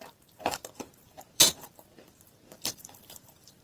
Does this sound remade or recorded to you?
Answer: remade